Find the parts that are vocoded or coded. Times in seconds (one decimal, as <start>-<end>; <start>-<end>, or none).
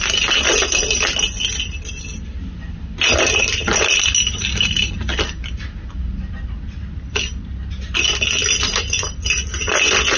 none